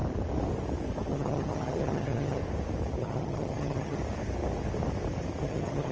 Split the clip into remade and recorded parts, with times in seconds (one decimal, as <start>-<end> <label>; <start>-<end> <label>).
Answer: 0.0-1.1 recorded; 1.1-2.4 remade; 2.4-3.0 recorded; 3.0-4.0 remade; 4.0-5.4 recorded; 5.4-5.9 remade